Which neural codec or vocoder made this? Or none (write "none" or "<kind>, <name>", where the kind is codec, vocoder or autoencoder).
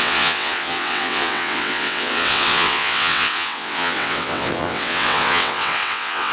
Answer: vocoder, WaveNeXt